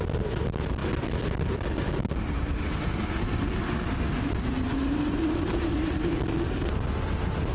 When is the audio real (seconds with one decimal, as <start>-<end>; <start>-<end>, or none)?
0.0-4.8; 5.9-7.5